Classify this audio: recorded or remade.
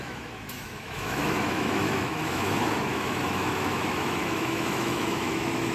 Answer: remade